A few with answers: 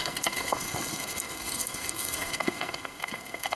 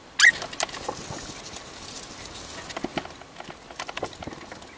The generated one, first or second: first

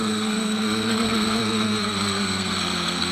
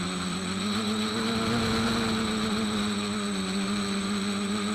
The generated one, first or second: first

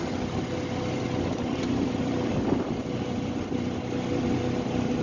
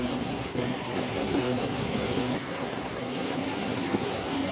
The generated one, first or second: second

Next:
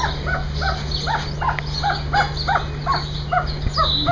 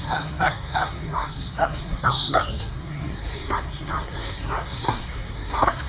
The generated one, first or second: second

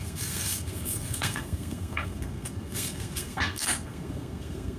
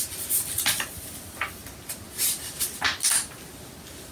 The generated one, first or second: first